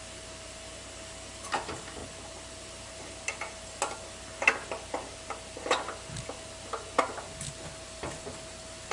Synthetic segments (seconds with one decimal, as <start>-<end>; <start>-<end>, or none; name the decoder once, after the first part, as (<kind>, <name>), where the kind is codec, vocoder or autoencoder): none